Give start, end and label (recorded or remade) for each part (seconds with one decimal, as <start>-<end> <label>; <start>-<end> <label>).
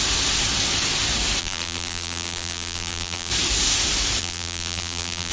0.0-1.4 recorded; 1.4-3.3 remade; 3.3-4.2 recorded; 4.2-5.3 remade